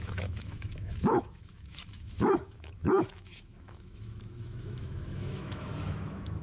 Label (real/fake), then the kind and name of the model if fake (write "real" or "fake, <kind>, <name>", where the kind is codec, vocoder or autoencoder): fake, autoencoder, DAC-VAE